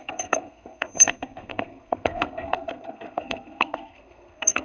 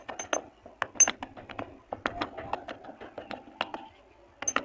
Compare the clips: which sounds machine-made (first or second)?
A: first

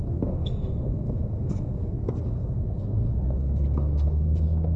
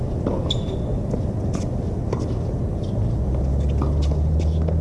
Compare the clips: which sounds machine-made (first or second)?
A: first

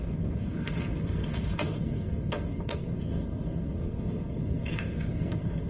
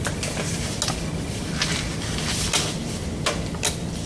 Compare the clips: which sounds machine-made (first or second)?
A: first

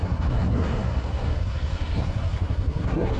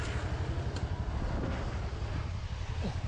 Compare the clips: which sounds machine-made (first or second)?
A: first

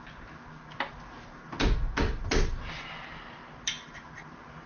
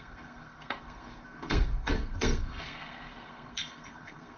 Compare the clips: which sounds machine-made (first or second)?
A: second